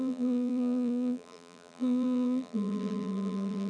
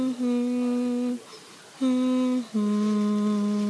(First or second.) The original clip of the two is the second